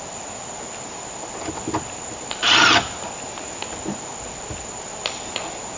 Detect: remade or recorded recorded